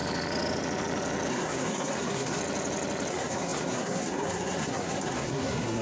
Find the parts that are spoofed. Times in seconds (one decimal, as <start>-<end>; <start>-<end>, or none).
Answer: 1.3-2.4; 3.1-5.8